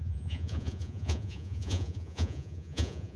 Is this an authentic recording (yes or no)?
no